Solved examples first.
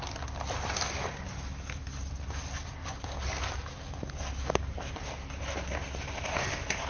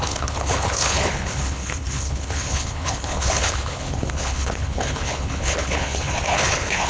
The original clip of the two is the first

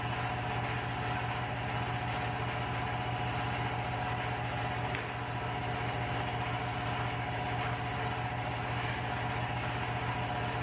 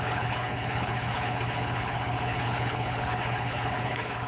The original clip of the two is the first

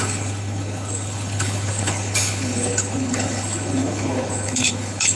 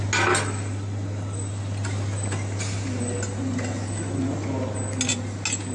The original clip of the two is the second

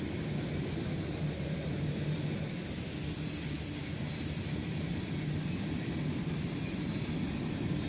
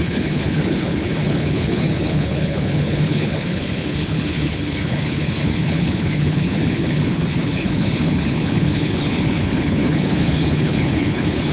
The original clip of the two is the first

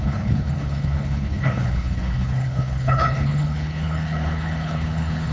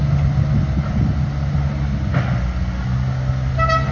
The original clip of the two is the second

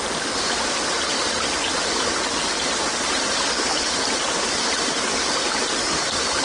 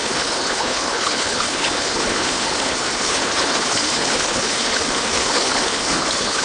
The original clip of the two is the first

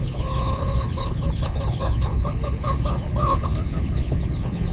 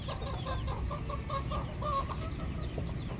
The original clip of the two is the second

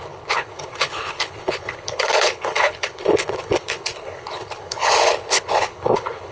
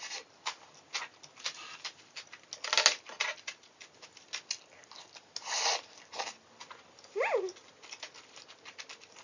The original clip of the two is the second